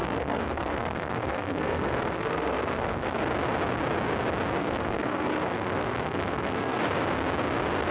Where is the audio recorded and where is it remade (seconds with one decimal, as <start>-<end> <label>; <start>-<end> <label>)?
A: 0.0-3.2 remade; 3.2-4.6 recorded; 4.6-6.8 remade; 6.8-7.9 recorded